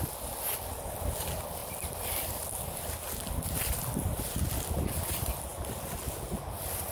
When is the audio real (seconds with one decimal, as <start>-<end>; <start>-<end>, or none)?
0.0-6.9